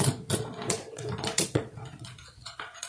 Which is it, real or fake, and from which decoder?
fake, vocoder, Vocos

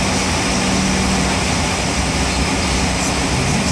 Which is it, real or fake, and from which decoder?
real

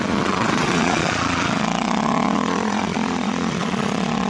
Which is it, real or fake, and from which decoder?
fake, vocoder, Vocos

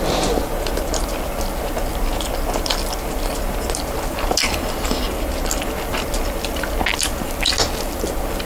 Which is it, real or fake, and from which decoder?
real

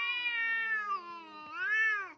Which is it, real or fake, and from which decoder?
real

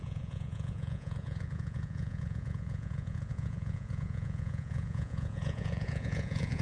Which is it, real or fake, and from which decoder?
fake, vocoder, Vocos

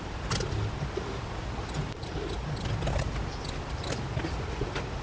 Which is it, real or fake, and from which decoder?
real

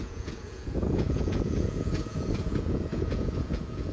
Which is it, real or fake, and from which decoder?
fake, vocoder, Vocos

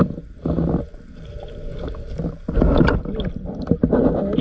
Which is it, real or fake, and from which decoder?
real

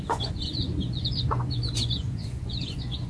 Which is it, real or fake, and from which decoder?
fake, vocoder, Vocos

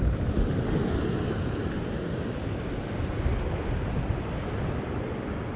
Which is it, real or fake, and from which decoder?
real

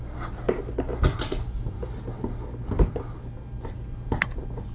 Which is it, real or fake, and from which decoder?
real